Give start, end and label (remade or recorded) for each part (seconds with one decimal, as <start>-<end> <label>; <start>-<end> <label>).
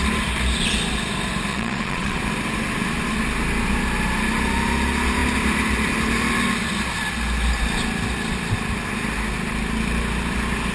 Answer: 0.0-1.5 recorded; 1.5-2.2 remade; 2.2-10.7 recorded